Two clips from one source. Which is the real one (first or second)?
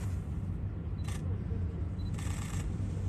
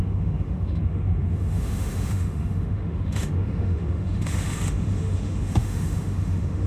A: first